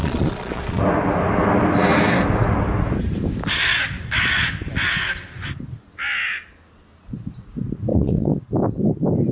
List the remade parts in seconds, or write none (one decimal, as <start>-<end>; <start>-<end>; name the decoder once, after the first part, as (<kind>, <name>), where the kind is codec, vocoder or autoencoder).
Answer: 0.0-0.8 (vocoder, Vocos); 7.9-8.4